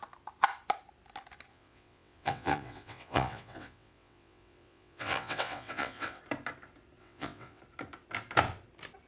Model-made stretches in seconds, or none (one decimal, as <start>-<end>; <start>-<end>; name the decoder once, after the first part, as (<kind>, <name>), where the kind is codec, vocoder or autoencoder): 1.5-6.2 (vocoder, WaveNeXt); 7.0-7.6